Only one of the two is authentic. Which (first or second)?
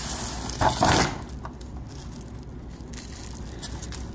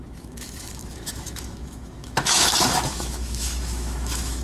first